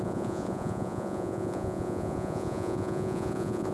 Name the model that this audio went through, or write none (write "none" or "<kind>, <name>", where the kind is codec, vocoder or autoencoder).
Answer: vocoder, Vocos